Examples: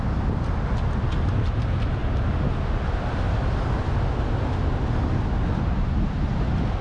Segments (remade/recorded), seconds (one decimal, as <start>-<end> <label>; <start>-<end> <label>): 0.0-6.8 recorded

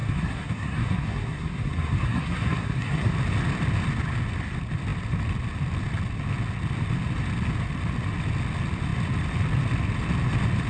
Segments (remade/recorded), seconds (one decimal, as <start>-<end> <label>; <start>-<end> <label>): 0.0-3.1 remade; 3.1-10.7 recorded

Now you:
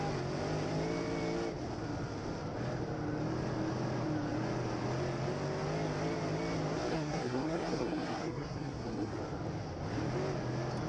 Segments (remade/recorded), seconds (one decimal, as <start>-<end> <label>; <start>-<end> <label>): 0.0-6.9 recorded; 6.9-9.2 remade; 9.2-10.9 recorded